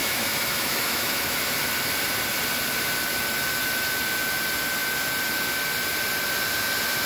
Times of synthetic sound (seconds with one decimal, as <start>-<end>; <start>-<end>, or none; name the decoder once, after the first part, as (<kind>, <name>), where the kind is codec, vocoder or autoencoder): 0.0-1.4 (autoencoder, DAC-VAE)